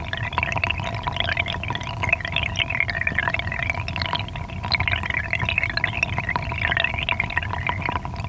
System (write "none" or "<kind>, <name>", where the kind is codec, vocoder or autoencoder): none